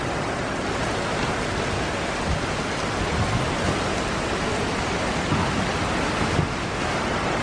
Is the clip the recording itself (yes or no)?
yes